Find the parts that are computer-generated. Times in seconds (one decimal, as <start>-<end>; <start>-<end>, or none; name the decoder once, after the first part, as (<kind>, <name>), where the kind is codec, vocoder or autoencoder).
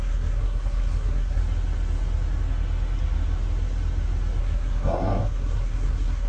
0.0-1.4 (codec, SNAC); 4.4-6.3